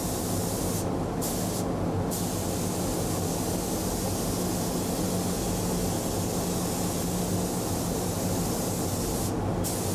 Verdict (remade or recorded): recorded